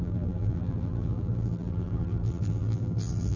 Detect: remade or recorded remade